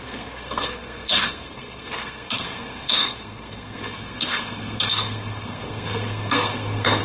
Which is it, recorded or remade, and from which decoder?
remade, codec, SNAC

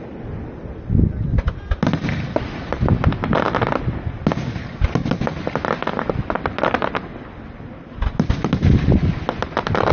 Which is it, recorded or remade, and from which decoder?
recorded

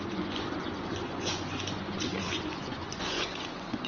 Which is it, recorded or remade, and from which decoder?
remade, vocoder, Vocos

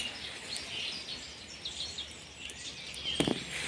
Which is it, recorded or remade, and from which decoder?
recorded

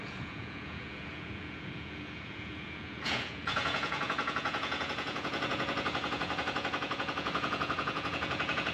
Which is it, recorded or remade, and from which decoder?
remade, vocoder, Vocos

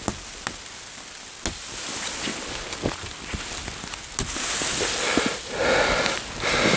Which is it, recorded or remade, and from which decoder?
recorded